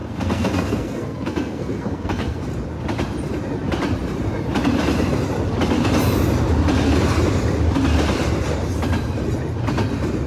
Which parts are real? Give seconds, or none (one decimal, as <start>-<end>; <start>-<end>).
2.4-10.3